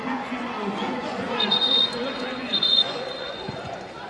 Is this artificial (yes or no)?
yes